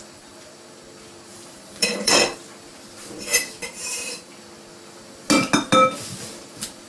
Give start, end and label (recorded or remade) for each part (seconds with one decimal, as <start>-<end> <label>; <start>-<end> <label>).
0.0-1.3 recorded; 1.3-2.1 remade; 2.1-3.6 recorded; 3.6-4.3 remade; 4.3-6.9 recorded

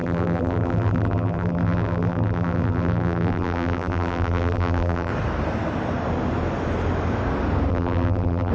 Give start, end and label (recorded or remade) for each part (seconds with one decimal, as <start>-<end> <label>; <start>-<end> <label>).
0.0-5.1 remade; 5.1-7.7 recorded; 7.7-8.5 remade

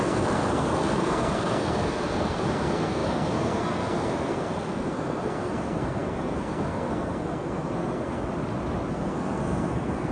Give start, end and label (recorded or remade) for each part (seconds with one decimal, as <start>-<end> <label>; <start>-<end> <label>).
0.0-8.2 remade; 8.2-8.9 recorded; 8.9-10.1 remade

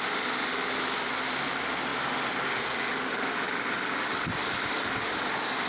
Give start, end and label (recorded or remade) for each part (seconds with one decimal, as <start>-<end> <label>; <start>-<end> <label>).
0.0-5.7 recorded

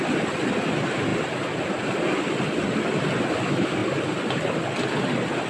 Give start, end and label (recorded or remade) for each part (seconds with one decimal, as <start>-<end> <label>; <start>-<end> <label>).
0.0-5.5 recorded

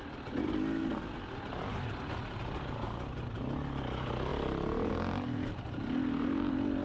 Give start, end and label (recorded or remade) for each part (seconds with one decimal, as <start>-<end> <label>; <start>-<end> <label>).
0.0-6.8 recorded

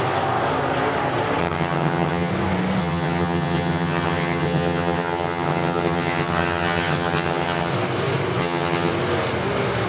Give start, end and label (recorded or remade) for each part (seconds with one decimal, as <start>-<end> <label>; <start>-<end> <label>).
0.0-1.4 recorded; 1.4-2.3 remade; 2.3-2.8 recorded; 2.8-7.7 remade; 7.7-8.4 recorded; 8.4-8.9 remade; 8.9-9.9 recorded

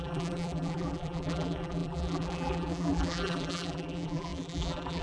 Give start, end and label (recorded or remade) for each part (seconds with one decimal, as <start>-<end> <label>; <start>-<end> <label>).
0.0-5.0 remade